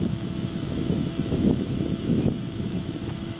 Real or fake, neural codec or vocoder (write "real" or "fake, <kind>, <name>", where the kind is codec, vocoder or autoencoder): fake, autoencoder, DAC-VAE